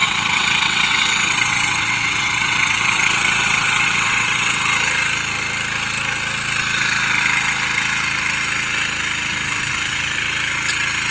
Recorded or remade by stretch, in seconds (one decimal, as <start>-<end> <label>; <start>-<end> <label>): 0.0-4.6 remade; 4.6-11.1 recorded